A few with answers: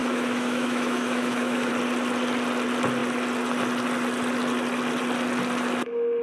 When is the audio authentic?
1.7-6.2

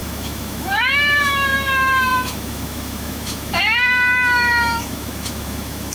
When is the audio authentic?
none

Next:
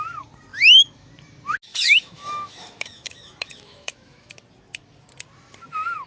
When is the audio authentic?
0.0-0.5; 1.1-1.7; 4.4-6.1

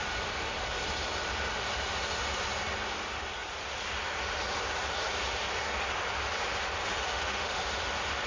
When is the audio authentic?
0.0-7.1; 7.6-8.3

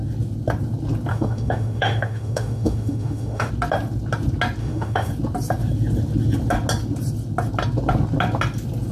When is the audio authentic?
0.0-1.1; 3.5-4.6; 5.1-8.9

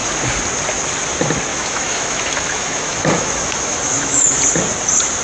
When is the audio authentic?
0.0-1.5; 4.4-5.2

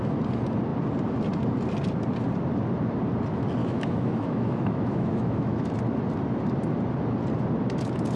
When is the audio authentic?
0.0-3.6; 5.7-8.2